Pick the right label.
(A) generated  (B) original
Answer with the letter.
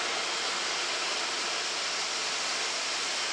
A